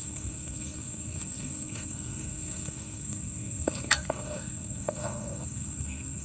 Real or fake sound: fake